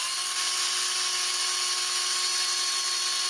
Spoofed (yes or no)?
no